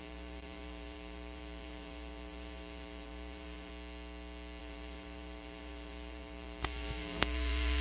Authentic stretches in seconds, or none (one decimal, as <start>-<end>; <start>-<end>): 3.7-4.6